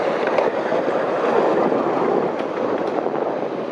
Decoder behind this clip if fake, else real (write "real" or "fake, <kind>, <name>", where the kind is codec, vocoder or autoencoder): real